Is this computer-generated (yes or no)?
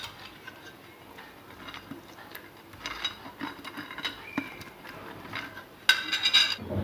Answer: no